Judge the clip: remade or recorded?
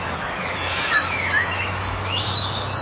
remade